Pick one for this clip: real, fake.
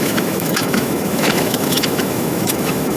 fake